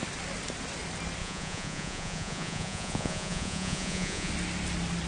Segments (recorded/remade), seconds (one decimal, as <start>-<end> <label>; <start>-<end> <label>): 0.0-1.2 recorded; 1.2-4.3 remade; 4.3-5.1 recorded